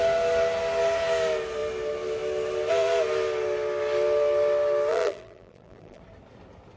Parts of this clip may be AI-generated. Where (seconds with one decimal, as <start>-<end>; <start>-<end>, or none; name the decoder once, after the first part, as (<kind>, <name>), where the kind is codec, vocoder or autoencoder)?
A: 4.9-6.0 (vocoder, BigVGAN v2)